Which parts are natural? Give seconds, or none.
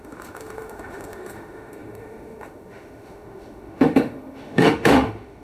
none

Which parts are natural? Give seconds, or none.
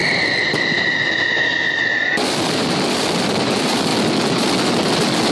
0.0-1.5; 3.9-5.3